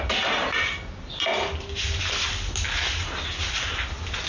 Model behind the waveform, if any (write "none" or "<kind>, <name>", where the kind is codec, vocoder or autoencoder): none